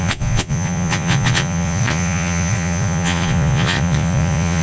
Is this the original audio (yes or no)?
no